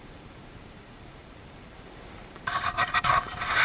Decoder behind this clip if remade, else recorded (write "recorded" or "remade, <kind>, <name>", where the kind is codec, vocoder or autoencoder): remade, vocoder, BigVGAN v2